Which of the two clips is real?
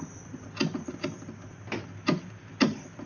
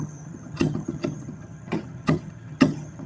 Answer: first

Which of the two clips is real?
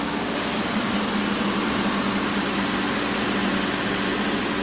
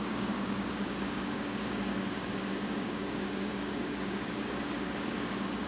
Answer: first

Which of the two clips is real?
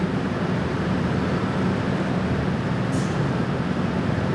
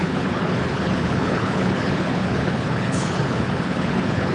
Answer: first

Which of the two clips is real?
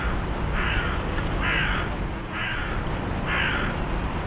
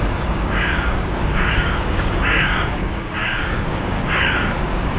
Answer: first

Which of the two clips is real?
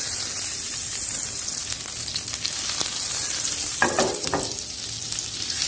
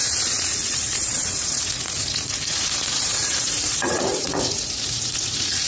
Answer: first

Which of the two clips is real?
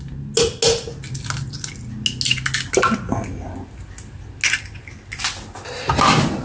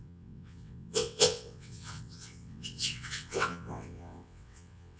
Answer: first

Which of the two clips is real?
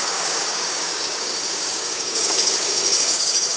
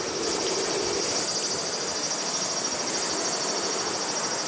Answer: second